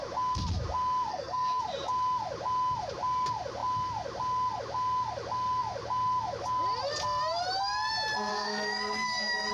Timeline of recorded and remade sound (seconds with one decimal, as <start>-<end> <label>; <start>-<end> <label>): 0.0-1.1 recorded; 1.1-1.6 remade; 1.6-8.3 recorded; 8.3-9.5 remade